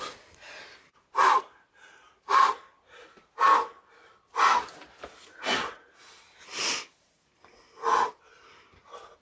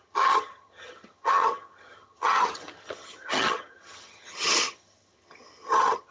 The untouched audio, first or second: first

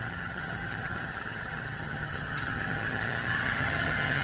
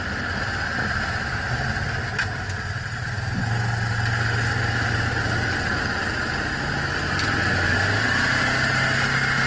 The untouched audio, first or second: second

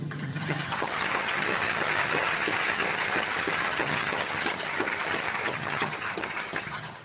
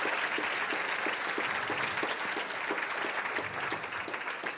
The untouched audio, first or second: second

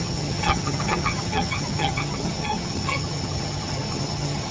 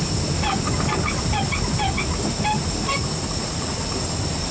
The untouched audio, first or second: second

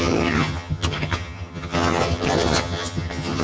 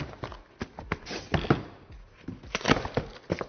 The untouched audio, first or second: second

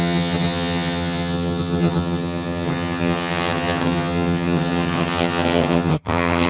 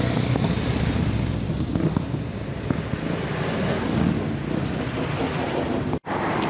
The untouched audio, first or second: second